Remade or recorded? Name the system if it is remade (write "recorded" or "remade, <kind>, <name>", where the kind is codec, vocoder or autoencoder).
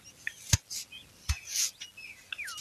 recorded